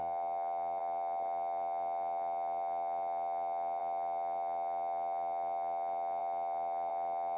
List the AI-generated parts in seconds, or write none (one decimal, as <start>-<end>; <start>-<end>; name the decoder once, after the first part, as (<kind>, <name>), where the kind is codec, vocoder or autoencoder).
none